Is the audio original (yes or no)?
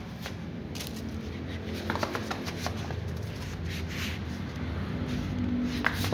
no